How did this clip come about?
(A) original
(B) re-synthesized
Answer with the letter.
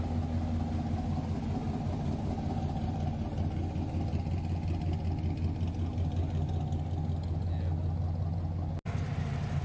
A